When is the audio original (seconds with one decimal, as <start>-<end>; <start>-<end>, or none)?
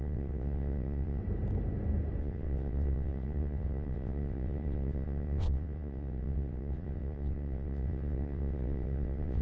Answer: 1.2-2.2